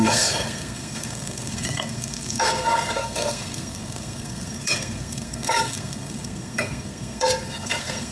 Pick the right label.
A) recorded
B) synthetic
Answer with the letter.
B